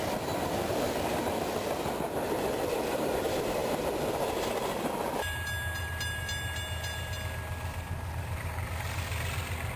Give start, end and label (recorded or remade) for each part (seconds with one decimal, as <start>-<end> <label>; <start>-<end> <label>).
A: 0.0-3.6 remade; 3.6-5.8 recorded; 5.8-9.8 remade